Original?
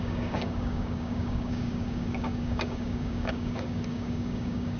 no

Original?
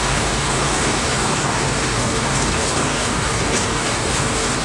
no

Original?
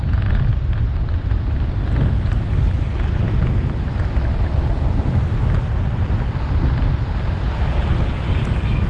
yes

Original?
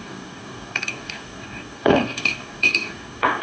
no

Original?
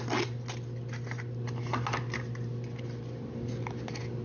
yes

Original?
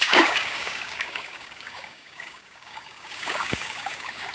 no